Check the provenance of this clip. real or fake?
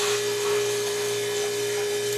fake